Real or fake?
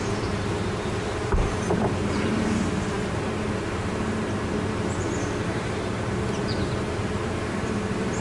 fake